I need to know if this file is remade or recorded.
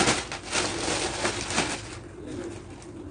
recorded